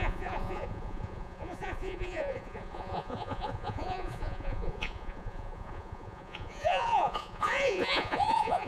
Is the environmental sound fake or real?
fake